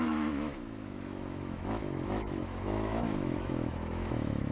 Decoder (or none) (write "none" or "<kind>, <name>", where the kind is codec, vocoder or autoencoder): autoencoder, DAC-VAE